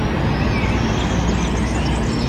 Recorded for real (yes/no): yes